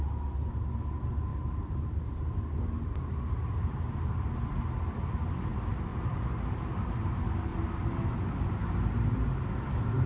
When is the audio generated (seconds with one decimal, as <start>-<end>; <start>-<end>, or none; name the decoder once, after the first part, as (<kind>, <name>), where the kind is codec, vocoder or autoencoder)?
none